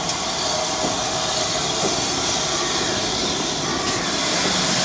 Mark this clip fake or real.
real